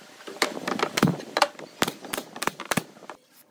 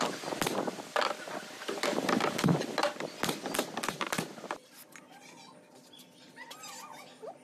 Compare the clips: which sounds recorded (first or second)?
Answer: second